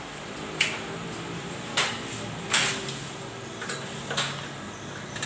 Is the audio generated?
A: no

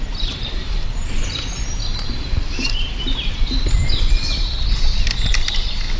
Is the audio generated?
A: no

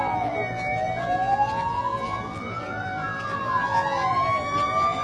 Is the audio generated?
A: yes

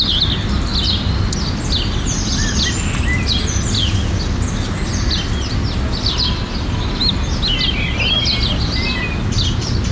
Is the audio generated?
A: no